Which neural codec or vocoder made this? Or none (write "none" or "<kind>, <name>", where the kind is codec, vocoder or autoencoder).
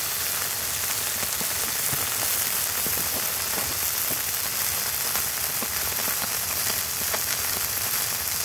none